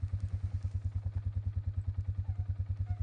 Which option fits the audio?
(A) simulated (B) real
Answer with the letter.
B